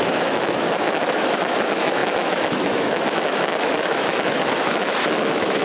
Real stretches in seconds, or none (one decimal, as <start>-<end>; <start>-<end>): none